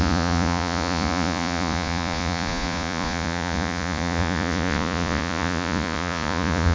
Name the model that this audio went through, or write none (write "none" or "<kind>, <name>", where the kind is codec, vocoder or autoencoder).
vocoder, Vocos